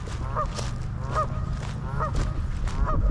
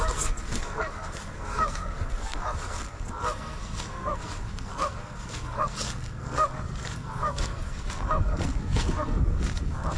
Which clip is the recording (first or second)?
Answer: first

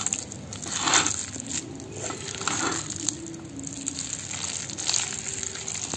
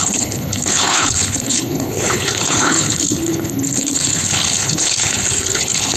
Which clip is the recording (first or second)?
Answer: first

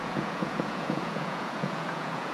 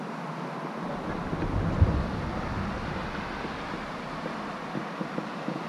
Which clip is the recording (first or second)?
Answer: second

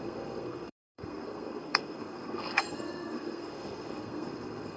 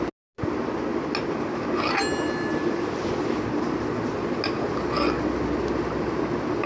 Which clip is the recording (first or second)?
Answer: second